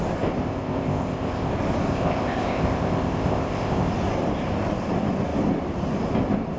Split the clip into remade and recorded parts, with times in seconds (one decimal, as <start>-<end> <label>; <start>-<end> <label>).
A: 0.0-0.4 recorded; 0.4-1.5 remade; 1.5-1.9 recorded; 1.9-3.9 remade; 3.9-6.6 recorded